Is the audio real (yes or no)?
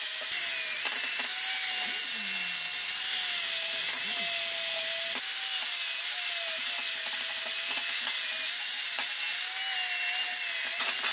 yes